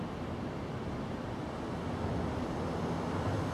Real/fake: real